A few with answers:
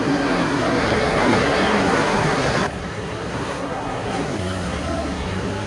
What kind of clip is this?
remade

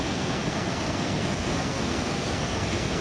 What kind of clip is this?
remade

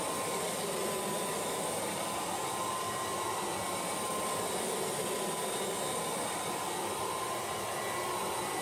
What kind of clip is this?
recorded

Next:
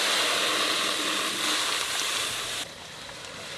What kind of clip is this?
recorded